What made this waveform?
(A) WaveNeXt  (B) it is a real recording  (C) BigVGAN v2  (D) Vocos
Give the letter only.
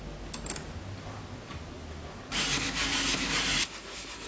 B